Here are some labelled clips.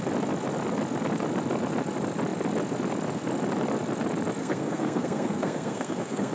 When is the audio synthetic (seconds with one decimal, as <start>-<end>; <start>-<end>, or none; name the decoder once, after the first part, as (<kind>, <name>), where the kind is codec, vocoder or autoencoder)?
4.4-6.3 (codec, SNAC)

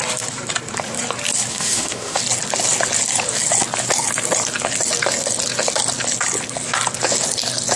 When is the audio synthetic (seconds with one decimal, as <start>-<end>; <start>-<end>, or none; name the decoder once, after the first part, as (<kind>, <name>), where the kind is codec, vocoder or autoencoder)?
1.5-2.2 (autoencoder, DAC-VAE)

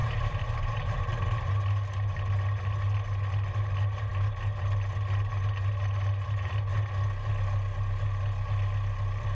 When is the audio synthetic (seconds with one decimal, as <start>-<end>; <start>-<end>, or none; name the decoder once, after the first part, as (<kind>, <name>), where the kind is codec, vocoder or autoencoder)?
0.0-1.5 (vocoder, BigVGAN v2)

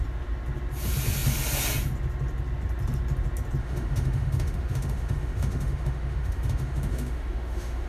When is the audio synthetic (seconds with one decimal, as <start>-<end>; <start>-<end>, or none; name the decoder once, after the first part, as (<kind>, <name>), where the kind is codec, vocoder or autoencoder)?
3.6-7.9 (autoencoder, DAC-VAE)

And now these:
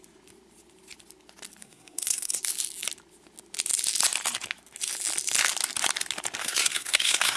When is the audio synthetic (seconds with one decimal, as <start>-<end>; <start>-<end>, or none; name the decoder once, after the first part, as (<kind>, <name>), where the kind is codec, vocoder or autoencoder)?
1.6-2.4 (codec, SNAC); 6.4-7.4

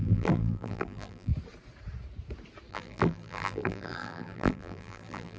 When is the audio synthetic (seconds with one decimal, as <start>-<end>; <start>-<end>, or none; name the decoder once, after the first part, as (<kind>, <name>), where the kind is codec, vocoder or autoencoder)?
0.0-1.3 (vocoder, BigVGAN v2); 2.7-5.4

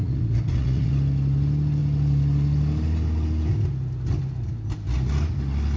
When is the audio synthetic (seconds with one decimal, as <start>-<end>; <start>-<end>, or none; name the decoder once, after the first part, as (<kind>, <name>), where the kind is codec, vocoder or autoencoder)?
0.0-0.9 (vocoder, Vocos)